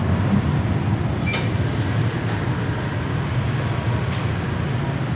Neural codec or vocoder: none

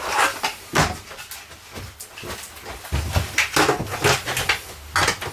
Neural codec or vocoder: none